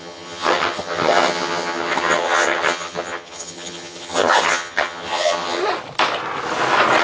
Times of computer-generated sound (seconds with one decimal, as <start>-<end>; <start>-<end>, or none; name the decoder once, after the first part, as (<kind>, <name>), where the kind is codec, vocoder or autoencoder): 0.0-5.6 (vocoder, HiFi-GAN)

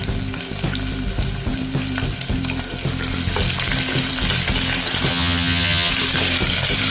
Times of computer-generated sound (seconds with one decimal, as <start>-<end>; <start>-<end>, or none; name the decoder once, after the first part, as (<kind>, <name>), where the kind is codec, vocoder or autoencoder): 5.1-5.9 (vocoder, HiFi-GAN)

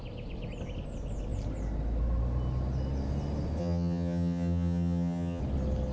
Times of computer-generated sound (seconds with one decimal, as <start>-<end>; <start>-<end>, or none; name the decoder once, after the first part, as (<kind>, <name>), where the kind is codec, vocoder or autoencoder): 3.6-5.4 (vocoder, HiFi-GAN)